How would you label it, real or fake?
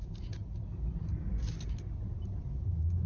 real